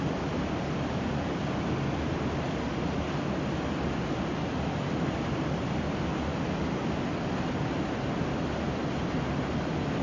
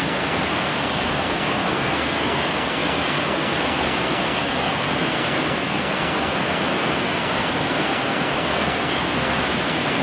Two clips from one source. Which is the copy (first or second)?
second